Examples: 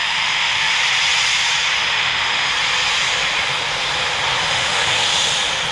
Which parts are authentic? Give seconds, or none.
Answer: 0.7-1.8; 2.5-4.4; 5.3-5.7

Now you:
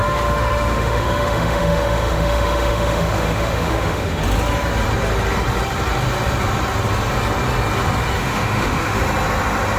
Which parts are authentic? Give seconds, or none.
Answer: 4.2-8.2; 9.0-9.8

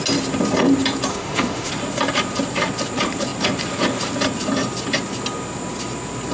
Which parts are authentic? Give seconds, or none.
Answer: 0.0-1.1; 1.7-6.3

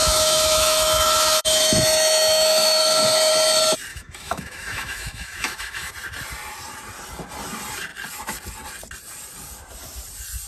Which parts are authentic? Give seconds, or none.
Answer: 3.3-3.9; 5.9-10.5